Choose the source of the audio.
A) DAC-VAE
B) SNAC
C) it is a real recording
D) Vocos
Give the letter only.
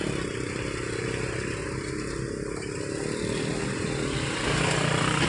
C